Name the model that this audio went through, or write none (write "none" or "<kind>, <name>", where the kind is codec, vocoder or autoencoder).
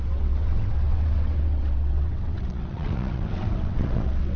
vocoder, WaveNeXt